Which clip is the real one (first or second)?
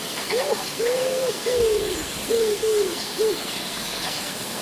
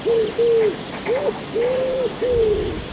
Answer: second